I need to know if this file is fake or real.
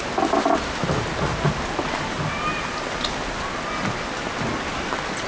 real